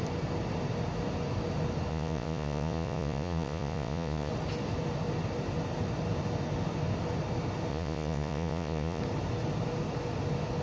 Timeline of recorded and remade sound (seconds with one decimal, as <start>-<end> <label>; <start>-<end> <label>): 0.0-1.9 recorded; 1.9-4.3 remade; 4.3-7.7 recorded; 7.7-9.0 remade; 9.0-10.6 recorded